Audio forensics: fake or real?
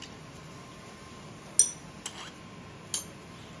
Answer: real